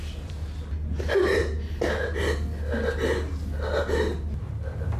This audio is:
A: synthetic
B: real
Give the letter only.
B